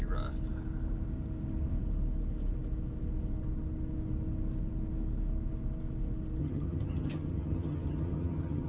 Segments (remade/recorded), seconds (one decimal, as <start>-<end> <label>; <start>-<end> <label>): 0.0-6.4 recorded; 6.4-8.7 remade